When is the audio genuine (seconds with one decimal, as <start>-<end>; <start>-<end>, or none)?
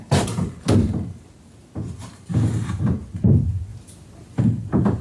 0.0-5.0